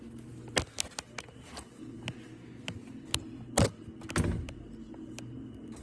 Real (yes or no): yes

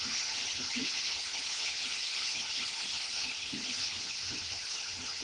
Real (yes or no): no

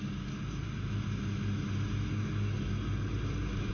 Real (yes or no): yes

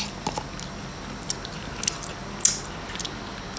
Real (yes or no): yes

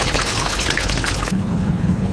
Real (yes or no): no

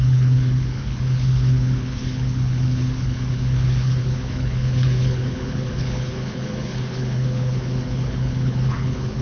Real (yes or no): no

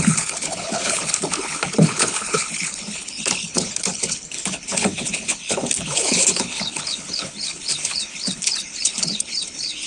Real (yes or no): no